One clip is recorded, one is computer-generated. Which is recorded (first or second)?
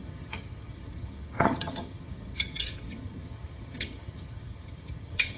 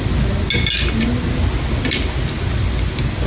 second